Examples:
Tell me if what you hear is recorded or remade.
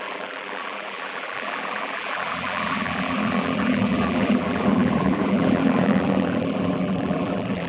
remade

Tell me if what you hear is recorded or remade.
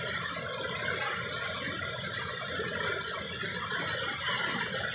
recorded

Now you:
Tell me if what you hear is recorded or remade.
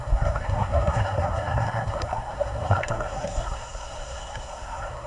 remade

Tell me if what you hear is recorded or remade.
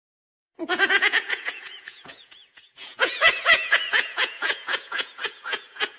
remade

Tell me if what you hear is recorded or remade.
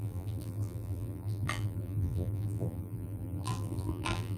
remade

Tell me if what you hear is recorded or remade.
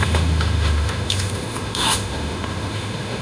remade